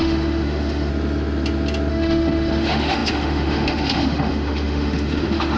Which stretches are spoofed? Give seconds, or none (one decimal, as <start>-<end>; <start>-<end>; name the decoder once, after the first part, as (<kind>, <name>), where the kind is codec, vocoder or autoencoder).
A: 0.0-0.9 (autoencoder, DAC-VAE); 1.9-5.6